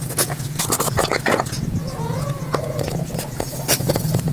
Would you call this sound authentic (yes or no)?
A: no